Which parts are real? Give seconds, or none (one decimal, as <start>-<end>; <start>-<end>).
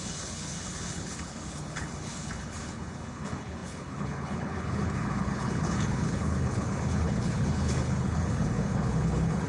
none